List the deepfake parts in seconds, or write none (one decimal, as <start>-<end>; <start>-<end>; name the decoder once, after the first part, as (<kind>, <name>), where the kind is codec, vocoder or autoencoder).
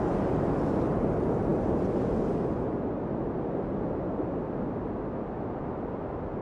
none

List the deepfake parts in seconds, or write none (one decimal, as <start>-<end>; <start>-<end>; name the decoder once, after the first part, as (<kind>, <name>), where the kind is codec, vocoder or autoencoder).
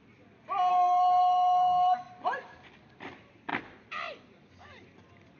0.7-2.1 (codec, SNAC)